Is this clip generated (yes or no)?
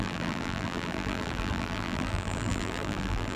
yes